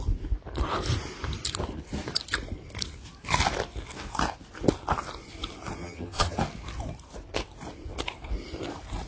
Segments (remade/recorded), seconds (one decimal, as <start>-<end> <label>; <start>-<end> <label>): 0.0-5.8 recorded; 5.8-6.4 remade; 6.4-9.1 recorded